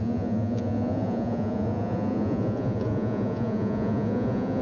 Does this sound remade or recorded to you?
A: remade